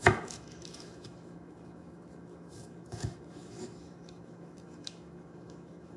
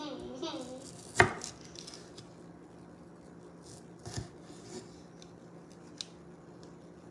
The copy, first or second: first